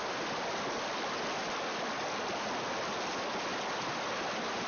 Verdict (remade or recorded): recorded